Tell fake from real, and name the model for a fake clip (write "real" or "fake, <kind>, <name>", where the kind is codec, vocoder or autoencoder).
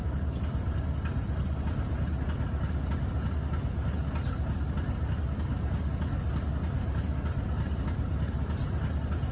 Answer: real